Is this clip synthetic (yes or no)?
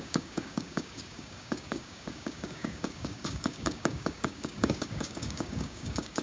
yes